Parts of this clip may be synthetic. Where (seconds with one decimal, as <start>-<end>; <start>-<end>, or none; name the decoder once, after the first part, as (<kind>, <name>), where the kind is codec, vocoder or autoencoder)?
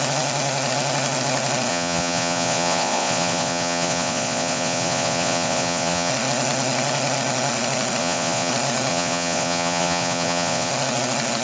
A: 1.7-6.1 (vocoder, Vocos); 8.0-8.5; 8.9-10.7